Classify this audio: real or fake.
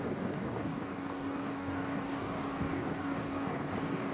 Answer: fake